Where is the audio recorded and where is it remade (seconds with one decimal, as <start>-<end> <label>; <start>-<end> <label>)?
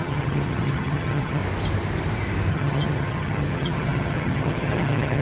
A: 0.0-1.4 remade; 1.4-2.5 recorded; 2.5-5.2 remade